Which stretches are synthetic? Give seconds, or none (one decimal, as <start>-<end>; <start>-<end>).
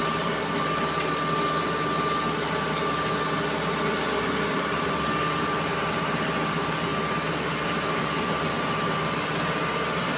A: none